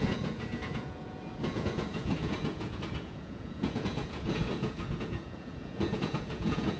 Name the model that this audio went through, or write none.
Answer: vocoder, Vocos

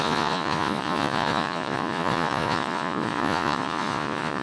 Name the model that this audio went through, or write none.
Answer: vocoder, Vocos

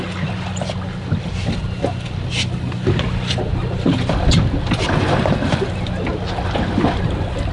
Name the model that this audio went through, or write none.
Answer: none